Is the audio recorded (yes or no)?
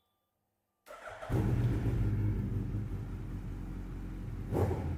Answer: yes